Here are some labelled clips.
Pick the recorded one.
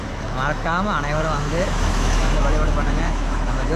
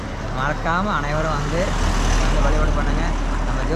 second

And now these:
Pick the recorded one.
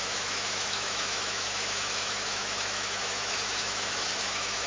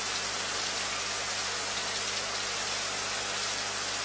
second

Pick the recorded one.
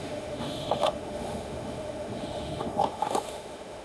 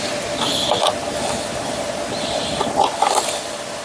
second